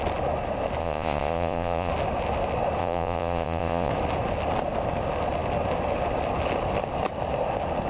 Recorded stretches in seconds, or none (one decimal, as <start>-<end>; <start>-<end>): 0.0-0.8; 1.9-2.8; 3.9-7.9